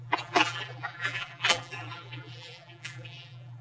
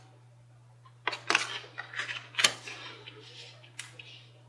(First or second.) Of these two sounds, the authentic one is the second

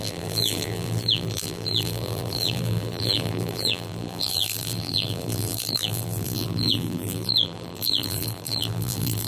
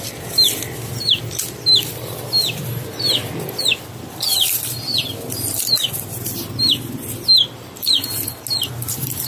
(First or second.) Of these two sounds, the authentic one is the second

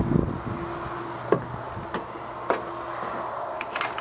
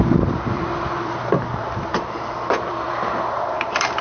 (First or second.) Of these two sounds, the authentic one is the first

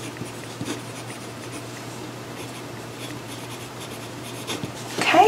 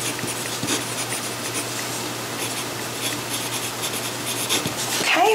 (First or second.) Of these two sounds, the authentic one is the second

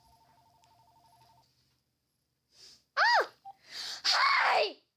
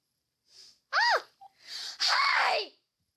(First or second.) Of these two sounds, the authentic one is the first